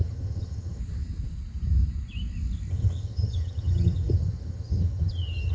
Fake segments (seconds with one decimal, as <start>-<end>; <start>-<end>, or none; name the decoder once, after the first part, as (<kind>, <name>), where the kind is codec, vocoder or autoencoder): 0.0-0.8 (vocoder, HiFi-GAN); 2.7-5.5